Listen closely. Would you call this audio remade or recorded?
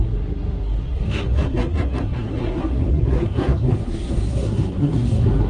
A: remade